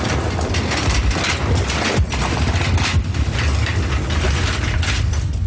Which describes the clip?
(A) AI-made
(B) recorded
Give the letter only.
B